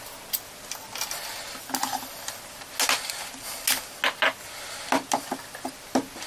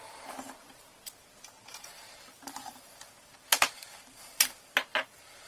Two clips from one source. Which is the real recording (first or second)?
first